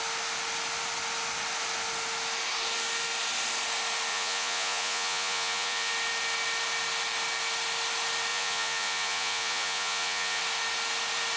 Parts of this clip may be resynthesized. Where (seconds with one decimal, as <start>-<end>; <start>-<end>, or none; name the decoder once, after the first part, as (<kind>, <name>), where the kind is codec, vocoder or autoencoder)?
4.1-5.9 (vocoder, Vocos); 8.3-10.4